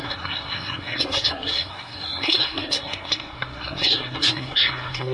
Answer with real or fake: fake